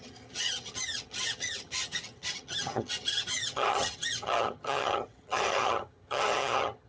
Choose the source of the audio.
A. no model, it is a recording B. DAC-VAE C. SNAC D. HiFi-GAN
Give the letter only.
D